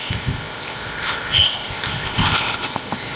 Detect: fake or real fake